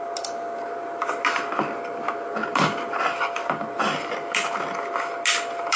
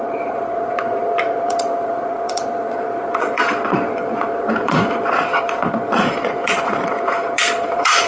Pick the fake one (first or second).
second